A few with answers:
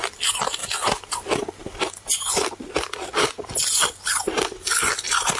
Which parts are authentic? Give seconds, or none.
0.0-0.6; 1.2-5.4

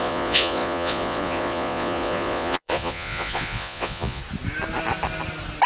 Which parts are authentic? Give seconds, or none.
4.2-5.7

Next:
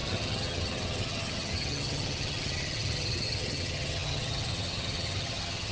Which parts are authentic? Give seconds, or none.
none